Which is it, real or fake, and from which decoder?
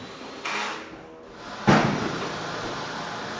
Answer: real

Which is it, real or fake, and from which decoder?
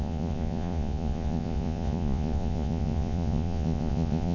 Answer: fake, vocoder, Vocos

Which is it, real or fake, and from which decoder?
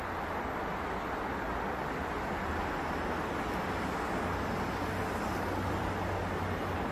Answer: real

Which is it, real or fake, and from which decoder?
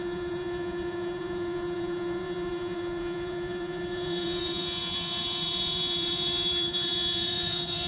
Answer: fake, vocoder, Vocos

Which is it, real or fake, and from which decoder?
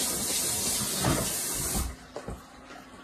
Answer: real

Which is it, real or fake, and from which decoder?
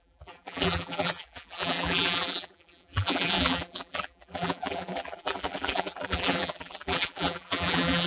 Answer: fake, vocoder, BigVGAN v2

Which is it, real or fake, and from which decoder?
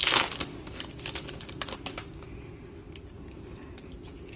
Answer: real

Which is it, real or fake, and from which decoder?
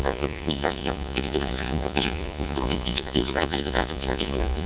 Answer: fake, vocoder, Vocos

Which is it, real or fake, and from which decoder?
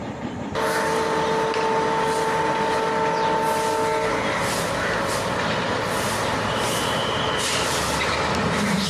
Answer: real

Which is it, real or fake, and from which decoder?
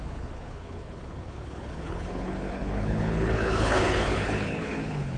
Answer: fake, codec, HILCodec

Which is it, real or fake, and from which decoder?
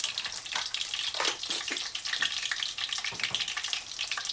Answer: real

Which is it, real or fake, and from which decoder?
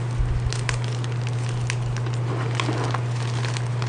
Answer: real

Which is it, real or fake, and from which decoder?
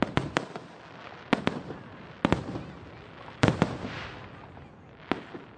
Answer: real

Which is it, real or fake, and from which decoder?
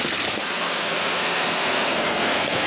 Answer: fake, codec, SNAC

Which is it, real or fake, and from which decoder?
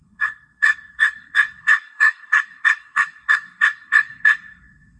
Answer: fake, codec, SNAC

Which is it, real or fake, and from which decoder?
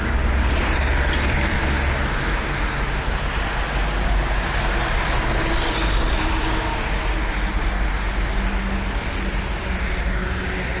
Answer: real